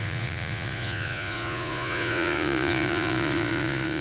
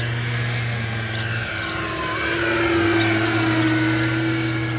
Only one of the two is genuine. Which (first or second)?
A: second